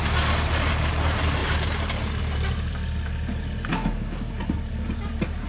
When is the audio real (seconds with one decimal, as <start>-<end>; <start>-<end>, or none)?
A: 0.0-3.7; 4.3-5.5